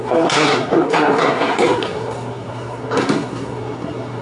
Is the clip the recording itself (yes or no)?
no